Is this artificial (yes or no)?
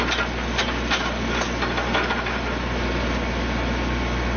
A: no